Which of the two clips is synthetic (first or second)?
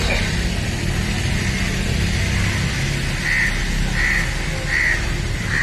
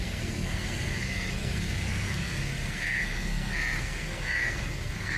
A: second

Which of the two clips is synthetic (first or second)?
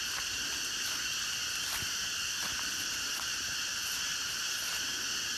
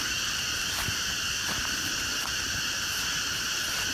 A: second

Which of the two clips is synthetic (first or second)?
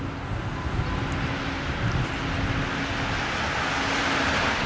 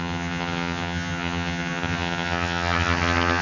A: second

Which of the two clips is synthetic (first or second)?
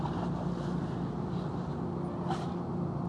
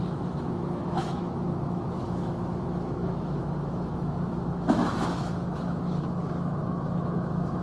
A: second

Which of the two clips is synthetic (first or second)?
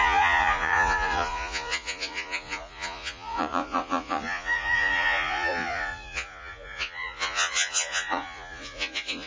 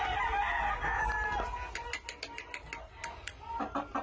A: first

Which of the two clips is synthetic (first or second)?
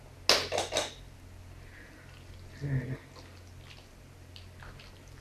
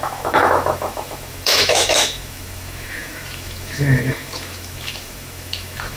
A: second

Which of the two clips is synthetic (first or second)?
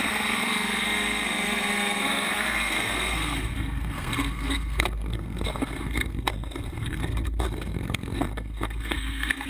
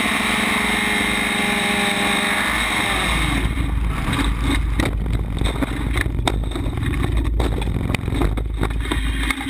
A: first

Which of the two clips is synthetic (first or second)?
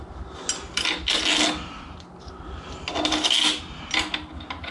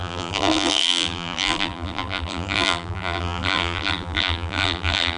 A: second